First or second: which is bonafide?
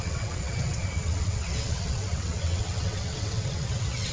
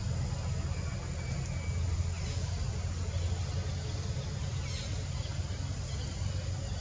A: second